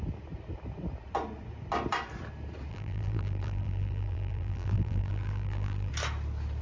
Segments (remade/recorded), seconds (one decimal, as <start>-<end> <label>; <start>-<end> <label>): 0.0-2.7 recorded; 2.7-5.9 remade; 5.9-6.6 recorded